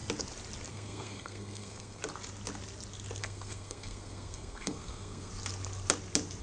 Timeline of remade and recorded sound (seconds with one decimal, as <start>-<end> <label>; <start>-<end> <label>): 0.0-0.7 recorded; 0.7-2.0 remade; 2.0-3.2 recorded; 3.2-5.3 remade; 5.3-6.4 recorded